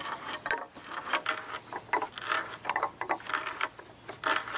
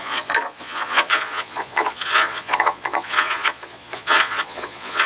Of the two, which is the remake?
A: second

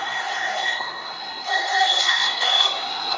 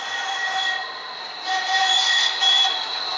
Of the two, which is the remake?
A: first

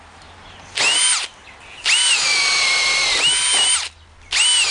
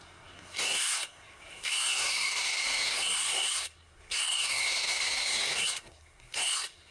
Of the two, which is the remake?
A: second